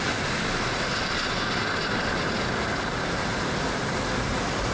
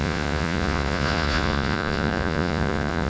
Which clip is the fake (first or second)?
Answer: second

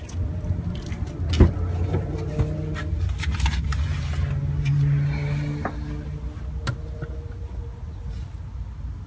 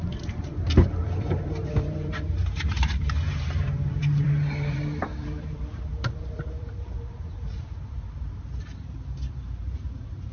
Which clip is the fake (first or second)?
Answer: second